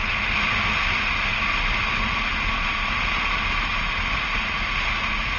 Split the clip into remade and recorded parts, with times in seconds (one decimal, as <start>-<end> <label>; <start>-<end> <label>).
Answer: 0.0-5.4 recorded